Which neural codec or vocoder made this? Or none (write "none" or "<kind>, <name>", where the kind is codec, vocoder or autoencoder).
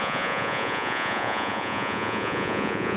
vocoder, Vocos